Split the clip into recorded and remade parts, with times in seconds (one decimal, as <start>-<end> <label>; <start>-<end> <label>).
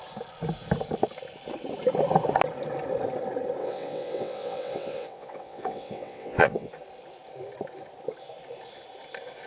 0.0-3.6 recorded; 3.6-6.7 remade; 6.7-9.5 recorded